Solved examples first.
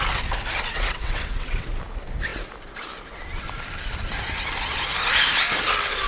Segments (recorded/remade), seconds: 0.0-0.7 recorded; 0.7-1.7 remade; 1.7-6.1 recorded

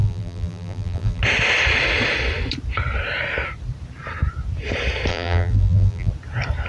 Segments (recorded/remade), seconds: 0.0-1.2 remade; 1.2-5.1 recorded; 5.1-6.1 remade; 6.1-6.7 recorded

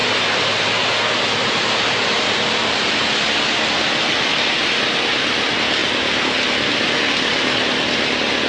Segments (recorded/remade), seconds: 0.0-8.5 recorded

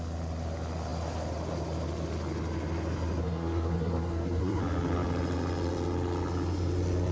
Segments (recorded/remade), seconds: 0.0-3.2 recorded; 3.2-4.6 remade; 4.6-7.1 recorded

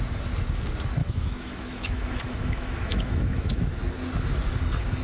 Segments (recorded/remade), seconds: 0.0-1.0 recorded; 1.0-3.7 remade; 3.7-5.0 recorded

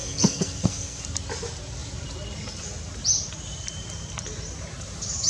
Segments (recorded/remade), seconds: 0.0-1.0 remade; 1.0-5.3 recorded

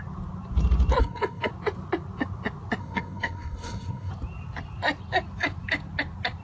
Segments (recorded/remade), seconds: 0.0-1.0 recorded; 1.0-1.5 remade; 1.5-2.8 recorded; 2.8-4.1 remade; 4.1-6.4 recorded